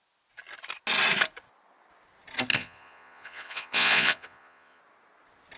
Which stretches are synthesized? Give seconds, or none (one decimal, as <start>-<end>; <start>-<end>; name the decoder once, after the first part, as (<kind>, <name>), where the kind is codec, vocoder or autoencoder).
2.5-4.8 (vocoder, Vocos)